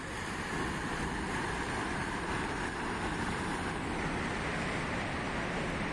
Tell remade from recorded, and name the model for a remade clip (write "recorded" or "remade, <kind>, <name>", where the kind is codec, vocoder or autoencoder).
remade, vocoder, BigVGAN v2